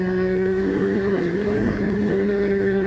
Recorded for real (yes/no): no